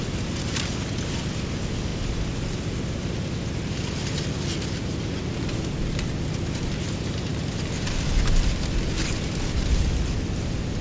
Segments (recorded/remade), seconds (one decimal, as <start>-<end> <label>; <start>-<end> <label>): 0.0-10.8 recorded